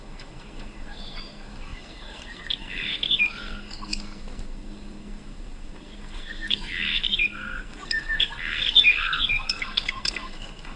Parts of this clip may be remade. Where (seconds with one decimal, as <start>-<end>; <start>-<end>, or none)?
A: 0.0-10.8

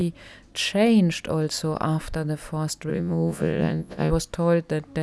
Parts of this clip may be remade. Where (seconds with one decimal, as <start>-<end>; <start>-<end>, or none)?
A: 2.9-4.1

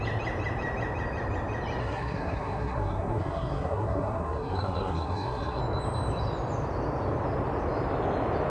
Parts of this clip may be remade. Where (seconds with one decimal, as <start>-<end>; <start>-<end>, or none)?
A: 1.8-5.6

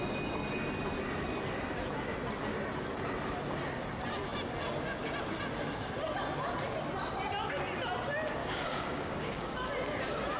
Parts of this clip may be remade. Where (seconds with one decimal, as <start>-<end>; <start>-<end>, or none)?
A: 8.4-9.7

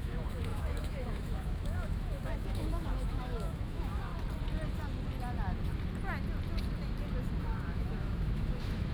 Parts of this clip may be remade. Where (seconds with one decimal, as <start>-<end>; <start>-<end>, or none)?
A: 0.0-4.1; 7.4-8.9

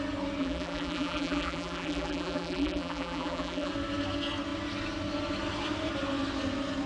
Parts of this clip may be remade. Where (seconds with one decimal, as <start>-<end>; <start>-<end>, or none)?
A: 0.4-3.7

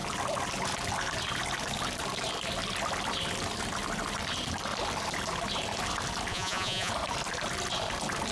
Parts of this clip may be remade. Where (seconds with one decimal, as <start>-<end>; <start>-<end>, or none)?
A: 6.3-6.9

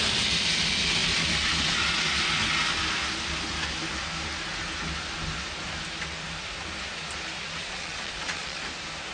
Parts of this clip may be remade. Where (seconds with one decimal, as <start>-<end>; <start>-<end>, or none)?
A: 7.6-8.6